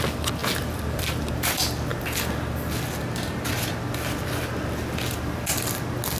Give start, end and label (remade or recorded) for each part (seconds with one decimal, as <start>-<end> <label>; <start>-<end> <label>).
0.0-0.4 recorded; 0.4-1.3 remade; 1.3-6.2 recorded